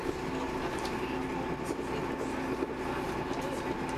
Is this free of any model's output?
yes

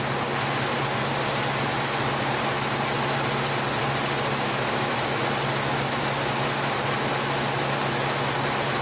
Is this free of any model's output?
yes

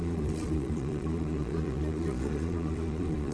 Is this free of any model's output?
no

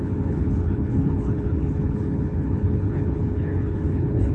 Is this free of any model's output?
no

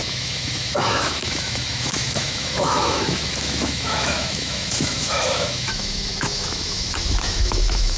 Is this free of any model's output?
no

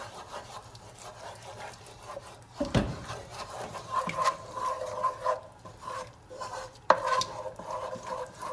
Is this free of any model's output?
no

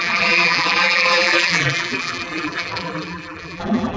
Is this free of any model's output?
no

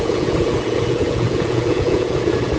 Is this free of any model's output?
no